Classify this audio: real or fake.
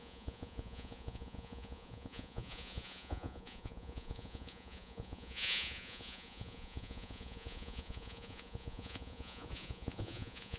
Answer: fake